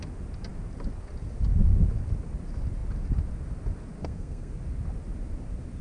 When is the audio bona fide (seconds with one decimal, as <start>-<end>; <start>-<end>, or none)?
0.0-4.0; 4.5-5.8